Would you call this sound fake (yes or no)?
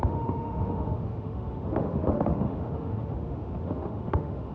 yes